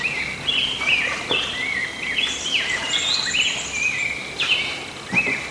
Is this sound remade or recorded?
recorded